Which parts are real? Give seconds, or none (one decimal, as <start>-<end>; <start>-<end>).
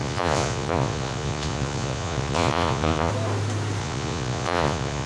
3.1-3.8